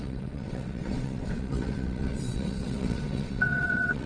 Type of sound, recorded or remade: remade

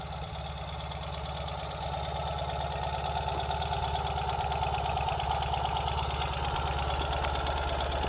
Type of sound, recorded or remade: recorded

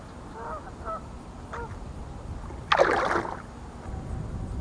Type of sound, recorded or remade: recorded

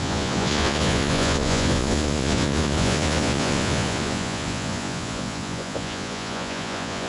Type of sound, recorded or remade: remade